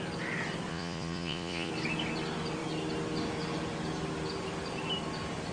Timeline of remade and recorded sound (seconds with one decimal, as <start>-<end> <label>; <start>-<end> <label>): 0.0-0.7 recorded; 0.7-1.7 remade; 1.7-5.5 recorded